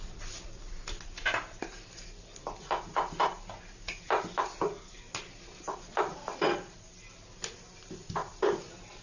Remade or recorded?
recorded